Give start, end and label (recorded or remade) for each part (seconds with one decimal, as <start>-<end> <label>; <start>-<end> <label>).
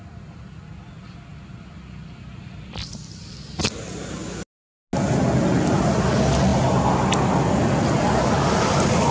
0.0-9.1 recorded